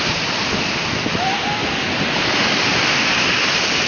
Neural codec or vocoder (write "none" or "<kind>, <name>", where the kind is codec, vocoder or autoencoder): none